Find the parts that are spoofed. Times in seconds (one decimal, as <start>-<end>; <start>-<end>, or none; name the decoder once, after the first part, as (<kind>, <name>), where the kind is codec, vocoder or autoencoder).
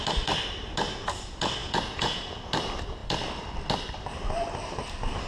1.6-2.4 (vocoder, Vocos)